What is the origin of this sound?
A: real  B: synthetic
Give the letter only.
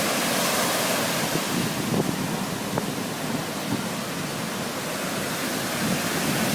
A